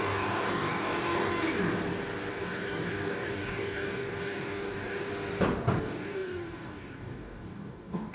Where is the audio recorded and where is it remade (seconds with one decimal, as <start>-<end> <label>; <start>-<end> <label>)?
0.0-1.3 remade; 1.3-2.3 recorded; 2.3-5.1 remade; 5.1-5.8 recorded; 5.8-8.1 remade